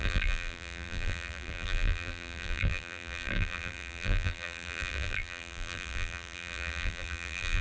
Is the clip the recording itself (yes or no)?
no